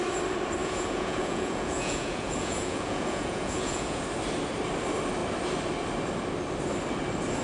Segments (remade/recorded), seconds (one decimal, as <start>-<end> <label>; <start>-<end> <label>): 0.0-0.6 recorded; 0.6-4.0 remade; 4.0-7.4 recorded